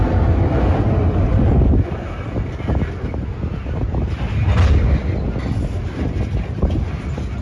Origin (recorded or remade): recorded